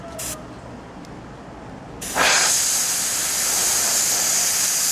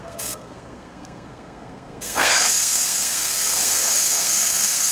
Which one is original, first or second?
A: first